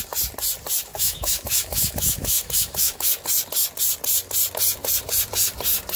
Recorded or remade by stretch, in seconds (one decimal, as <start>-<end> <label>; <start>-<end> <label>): 0.0-0.9 recorded; 0.9-3.1 remade; 3.1-6.0 recorded